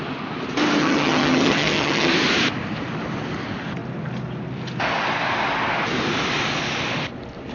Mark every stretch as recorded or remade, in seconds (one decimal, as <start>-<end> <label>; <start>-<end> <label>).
0.0-0.8 recorded; 0.8-2.1 remade; 2.1-7.5 recorded